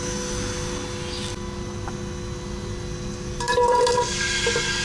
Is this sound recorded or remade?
recorded